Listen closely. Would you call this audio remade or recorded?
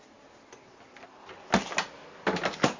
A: recorded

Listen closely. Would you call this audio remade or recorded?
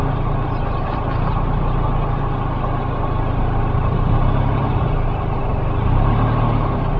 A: recorded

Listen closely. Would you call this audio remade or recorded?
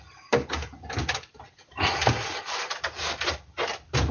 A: recorded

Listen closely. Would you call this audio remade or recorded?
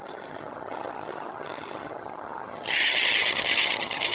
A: remade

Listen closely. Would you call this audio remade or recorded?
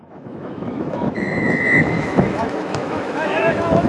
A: remade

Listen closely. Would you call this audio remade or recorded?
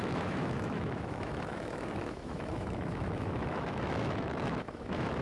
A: remade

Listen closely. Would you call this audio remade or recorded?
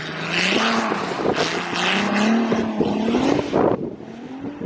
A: recorded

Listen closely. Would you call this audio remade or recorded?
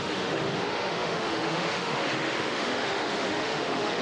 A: remade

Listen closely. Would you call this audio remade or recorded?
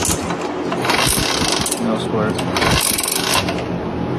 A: recorded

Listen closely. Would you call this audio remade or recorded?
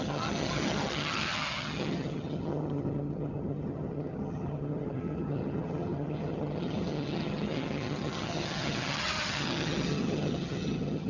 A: remade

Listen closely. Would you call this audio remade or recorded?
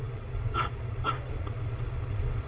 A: remade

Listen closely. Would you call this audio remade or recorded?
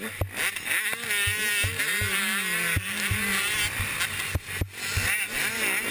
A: recorded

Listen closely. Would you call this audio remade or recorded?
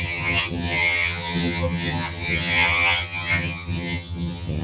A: remade